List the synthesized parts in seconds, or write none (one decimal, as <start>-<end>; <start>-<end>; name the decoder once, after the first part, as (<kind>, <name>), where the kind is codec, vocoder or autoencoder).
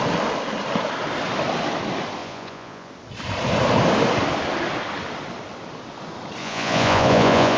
2.2-2.9 (vocoder, Vocos); 6.4-7.6